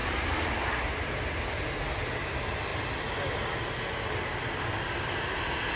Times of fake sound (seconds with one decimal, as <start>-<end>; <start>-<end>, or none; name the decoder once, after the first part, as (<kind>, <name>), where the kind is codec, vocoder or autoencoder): none